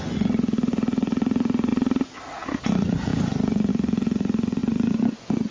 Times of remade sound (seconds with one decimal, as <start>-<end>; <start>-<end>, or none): 0.0-1.7; 2.7-5.5